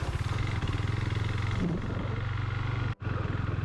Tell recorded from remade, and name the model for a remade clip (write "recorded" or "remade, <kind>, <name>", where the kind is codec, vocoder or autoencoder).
recorded